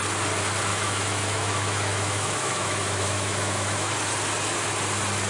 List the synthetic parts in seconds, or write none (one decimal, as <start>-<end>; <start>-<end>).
0.7-3.9